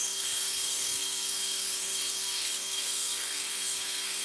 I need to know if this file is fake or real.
fake